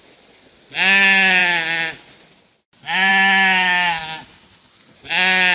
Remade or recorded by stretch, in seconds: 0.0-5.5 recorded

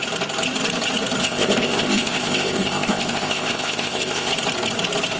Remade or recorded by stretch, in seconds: 0.0-1.2 recorded; 1.2-4.3 remade; 4.3-5.2 recorded

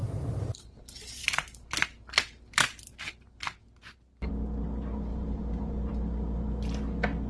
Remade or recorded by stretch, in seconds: 0.0-4.3 remade; 4.3-5.1 recorded; 5.1-5.9 remade; 5.9-7.3 recorded